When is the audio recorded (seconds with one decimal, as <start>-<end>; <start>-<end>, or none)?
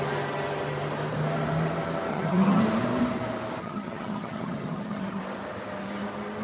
0.0-2.1; 2.6-3.6; 5.2-6.4